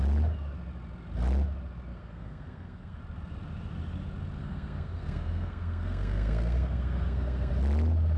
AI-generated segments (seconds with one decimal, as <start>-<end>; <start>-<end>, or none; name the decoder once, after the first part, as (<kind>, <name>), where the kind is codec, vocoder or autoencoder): 1.9-3.0 (codec, SNAC); 4.4-7.5